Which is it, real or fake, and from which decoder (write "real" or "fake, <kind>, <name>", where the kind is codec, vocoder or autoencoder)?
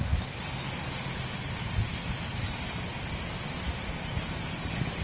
real